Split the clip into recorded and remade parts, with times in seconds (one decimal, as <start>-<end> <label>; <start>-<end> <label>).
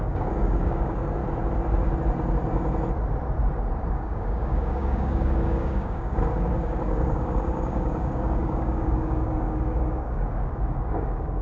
0.0-1.2 remade; 1.2-3.9 recorded; 3.9-11.4 remade